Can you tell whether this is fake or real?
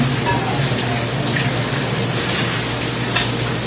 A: real